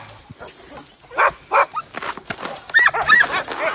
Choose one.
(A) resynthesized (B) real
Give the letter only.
B